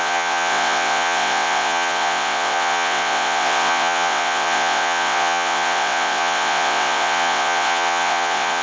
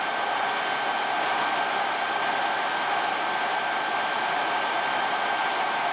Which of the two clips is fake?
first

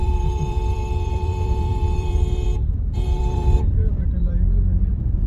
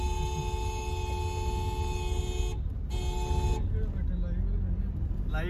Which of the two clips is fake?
first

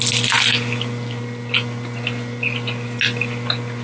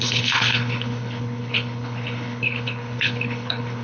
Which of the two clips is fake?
second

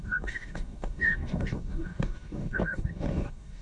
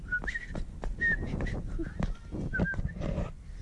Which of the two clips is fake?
first